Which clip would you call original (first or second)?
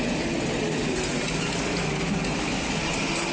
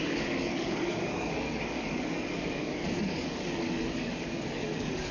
first